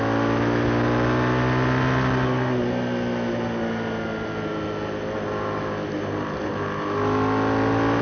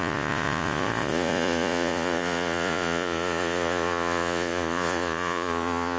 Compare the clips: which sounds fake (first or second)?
second